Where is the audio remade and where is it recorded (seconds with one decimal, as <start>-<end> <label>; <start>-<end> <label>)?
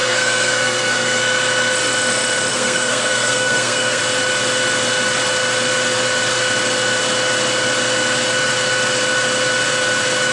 0.0-1.2 remade; 1.2-2.5 recorded; 2.5-4.0 remade; 4.0-10.3 recorded